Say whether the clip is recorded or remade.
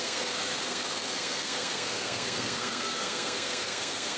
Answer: remade